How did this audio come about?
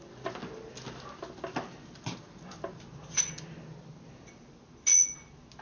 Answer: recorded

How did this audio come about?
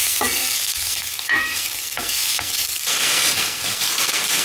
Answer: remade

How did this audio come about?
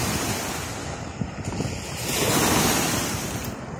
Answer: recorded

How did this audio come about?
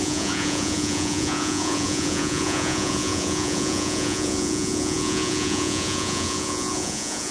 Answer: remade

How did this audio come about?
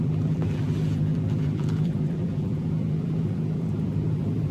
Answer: remade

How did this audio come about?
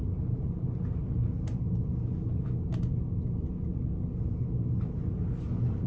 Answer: recorded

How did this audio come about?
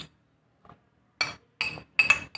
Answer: recorded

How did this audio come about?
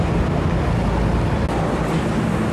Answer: recorded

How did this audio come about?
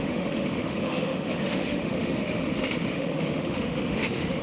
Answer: remade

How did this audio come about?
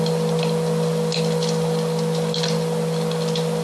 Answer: recorded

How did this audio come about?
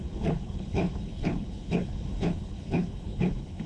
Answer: remade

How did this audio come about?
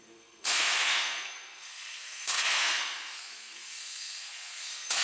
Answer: remade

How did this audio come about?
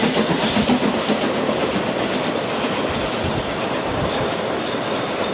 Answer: remade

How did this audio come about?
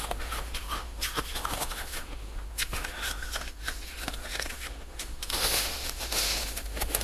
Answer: remade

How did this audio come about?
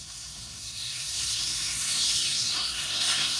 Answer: remade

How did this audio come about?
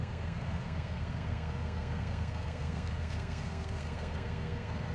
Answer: remade